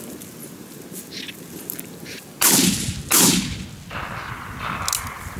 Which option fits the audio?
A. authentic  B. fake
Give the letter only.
A